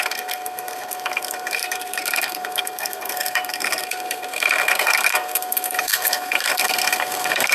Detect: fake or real fake